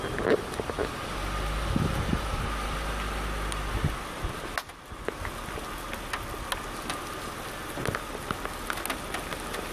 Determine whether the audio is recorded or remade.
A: recorded